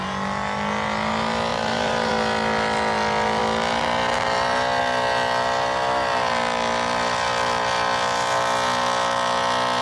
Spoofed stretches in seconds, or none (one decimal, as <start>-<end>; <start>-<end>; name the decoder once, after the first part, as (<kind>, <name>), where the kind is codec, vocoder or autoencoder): 1.5-2.1 (vocoder, BigVGAN v2)